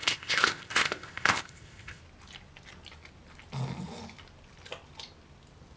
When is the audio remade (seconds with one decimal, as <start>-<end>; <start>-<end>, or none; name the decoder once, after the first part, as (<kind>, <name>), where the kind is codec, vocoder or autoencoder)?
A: 0.0-2.0 (codec, ZipCodec)